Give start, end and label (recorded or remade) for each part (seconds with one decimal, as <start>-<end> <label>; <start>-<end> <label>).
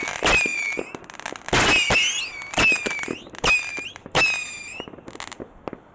0.0-5.9 recorded